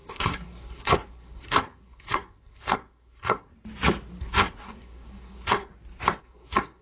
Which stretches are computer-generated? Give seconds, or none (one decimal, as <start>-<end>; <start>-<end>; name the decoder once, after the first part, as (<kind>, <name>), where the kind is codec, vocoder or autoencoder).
0.0-3.5 (codec, SNAC); 4.2-5.7; 6.2-6.8

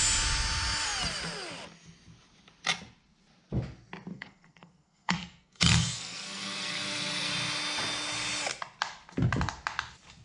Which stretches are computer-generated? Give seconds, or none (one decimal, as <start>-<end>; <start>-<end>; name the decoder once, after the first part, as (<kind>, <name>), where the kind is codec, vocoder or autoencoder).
4.1-7.3 (codec, SNAC)

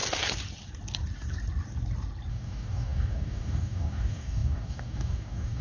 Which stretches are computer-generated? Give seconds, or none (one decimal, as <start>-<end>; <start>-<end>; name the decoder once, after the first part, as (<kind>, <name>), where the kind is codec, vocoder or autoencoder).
2.3-5.6 (codec, DAC)